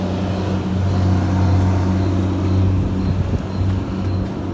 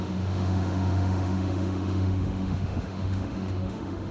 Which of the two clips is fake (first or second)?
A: second